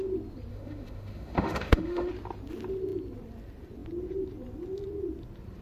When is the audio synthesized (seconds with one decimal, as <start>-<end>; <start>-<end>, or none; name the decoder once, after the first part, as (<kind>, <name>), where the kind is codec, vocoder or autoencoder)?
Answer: 0.5-2.1 (autoencoder, DAC-VAE)